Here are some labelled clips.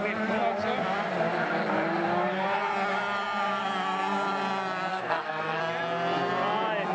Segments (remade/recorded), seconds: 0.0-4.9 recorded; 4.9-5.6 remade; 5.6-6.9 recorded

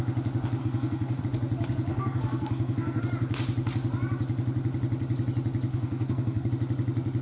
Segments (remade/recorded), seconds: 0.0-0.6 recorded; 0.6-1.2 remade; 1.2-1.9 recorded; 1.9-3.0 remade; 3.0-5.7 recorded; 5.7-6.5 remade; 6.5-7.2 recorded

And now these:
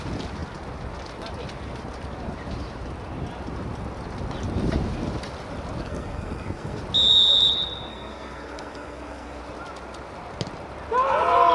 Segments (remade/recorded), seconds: 0.0-5.8 recorded; 5.8-6.8 remade; 6.8-7.9 recorded; 7.9-9.4 remade; 9.4-11.5 recorded

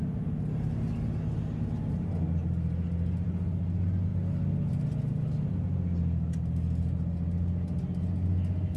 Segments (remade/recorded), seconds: 0.0-8.8 recorded

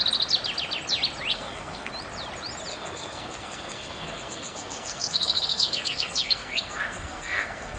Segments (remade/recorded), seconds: 0.0-1.3 recorded; 1.3-1.9 remade; 1.9-2.7 recorded; 2.7-7.8 remade

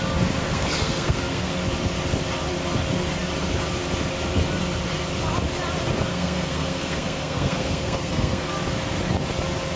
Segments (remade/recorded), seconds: 0.0-0.4 recorded; 0.4-1.5 remade; 1.5-6.1 recorded; 6.1-8.5 remade; 8.5-9.8 recorded

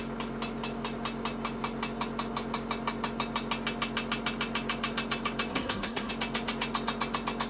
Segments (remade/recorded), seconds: 0.0-5.5 recorded; 5.5-6.1 remade; 6.1-7.5 recorded

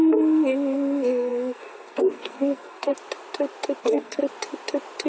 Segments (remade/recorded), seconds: 0.0-2.9 remade; 2.9-3.8 recorded; 3.8-4.2 remade; 4.2-5.1 recorded